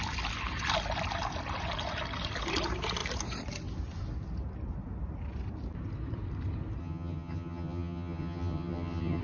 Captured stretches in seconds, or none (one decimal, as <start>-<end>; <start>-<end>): 0.0-6.8